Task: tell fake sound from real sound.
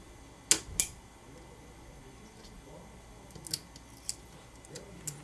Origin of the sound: real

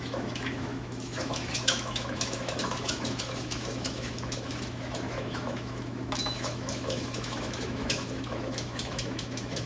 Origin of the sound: fake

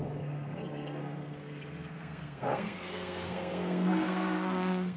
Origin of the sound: fake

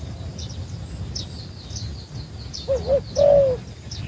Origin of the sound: real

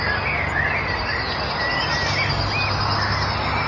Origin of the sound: real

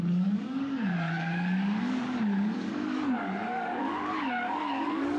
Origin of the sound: fake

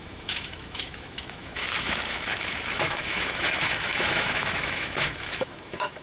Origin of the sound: fake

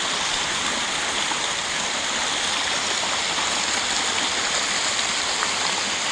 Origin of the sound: real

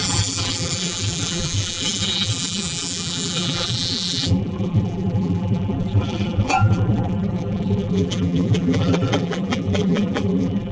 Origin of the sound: fake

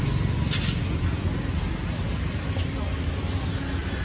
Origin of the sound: real